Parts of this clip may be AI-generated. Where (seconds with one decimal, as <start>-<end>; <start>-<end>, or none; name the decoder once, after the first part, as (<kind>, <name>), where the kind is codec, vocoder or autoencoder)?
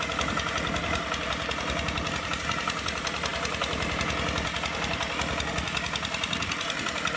none